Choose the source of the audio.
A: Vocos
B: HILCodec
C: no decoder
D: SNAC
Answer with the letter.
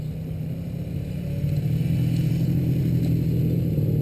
C